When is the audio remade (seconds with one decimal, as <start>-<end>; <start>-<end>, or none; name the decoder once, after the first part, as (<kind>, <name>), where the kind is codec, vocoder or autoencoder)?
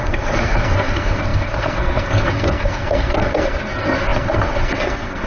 0.0-5.3 (codec, SNAC)